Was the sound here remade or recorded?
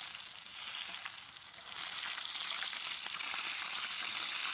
recorded